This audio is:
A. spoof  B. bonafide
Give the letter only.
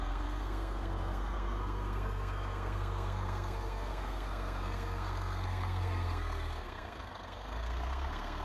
A